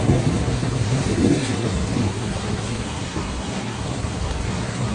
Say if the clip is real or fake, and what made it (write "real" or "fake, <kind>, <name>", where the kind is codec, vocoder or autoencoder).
fake, codec, SNAC